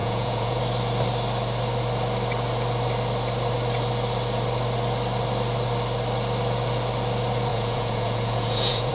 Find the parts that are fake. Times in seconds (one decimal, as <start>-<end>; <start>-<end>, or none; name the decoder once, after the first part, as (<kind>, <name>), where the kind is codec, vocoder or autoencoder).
0.0-0.6 (vocoder, Vocos); 7.5-8.9